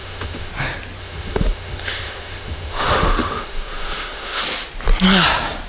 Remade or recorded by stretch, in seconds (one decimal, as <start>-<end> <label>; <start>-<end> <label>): 0.0-0.5 remade; 0.5-1.0 recorded; 1.0-4.4 remade; 4.4-5.7 recorded